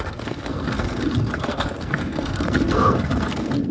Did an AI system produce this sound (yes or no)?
yes